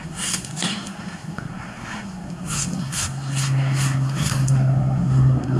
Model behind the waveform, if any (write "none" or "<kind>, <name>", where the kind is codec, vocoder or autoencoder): codec, SNAC